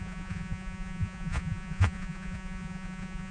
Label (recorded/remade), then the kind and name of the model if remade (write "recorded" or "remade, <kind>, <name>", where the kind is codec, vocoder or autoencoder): remade, vocoder, Vocos